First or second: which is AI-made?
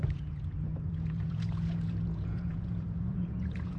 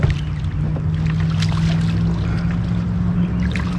first